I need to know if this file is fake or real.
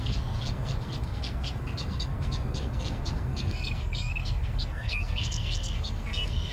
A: fake